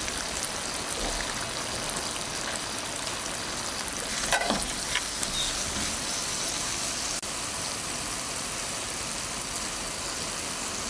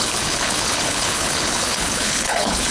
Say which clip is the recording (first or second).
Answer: first